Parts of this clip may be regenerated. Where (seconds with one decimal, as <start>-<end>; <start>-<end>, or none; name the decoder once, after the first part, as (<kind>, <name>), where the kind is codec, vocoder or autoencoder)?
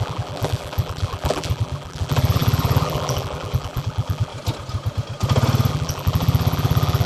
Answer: 0.0-4.3 (vocoder, BigVGAN v2); 5.7-7.1